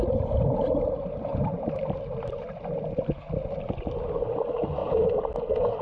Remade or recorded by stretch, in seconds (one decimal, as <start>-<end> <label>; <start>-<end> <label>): 0.0-1.3 recorded; 1.3-2.6 remade; 2.6-5.8 recorded